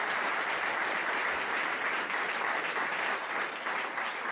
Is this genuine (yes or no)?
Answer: yes